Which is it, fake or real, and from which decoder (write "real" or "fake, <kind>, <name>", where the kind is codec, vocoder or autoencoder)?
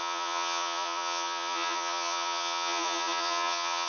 fake, vocoder, Vocos